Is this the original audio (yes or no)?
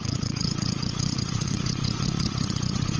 no